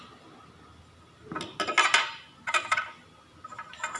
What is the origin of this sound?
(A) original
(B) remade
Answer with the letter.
A